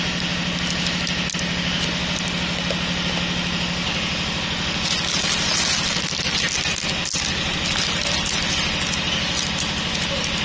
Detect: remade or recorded recorded